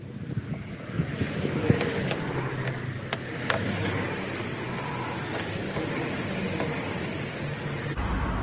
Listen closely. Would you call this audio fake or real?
real